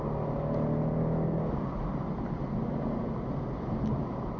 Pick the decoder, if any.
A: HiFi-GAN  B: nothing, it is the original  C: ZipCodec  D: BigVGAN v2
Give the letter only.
B